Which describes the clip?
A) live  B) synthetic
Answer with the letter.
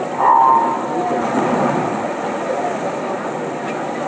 A